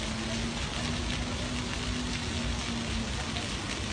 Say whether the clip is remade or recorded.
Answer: recorded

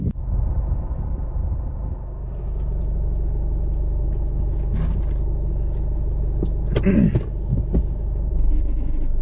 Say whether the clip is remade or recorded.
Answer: recorded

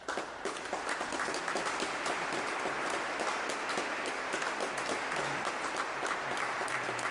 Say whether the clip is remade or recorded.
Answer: recorded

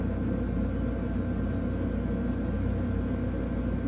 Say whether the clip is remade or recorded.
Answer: recorded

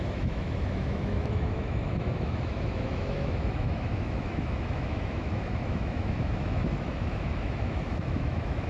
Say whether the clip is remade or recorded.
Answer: remade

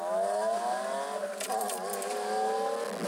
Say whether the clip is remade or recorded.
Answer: recorded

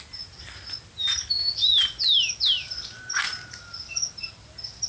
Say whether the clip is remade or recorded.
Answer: recorded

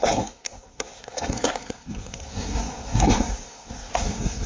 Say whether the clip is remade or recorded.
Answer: remade